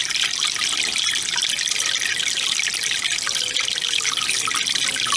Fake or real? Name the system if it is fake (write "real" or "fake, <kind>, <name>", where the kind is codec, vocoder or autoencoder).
real